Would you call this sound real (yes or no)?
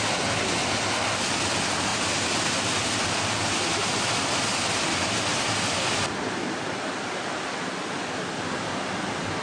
yes